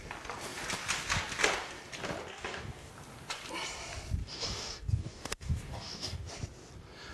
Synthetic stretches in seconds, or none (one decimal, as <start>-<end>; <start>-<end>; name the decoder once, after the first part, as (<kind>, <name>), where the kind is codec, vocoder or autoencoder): 2.3-2.9 (codec, DAC); 4.2-6.3